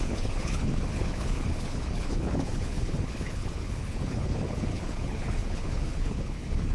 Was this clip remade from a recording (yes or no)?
yes